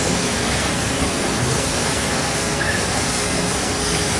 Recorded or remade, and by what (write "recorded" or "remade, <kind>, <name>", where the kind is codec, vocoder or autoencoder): remade, codec, SNAC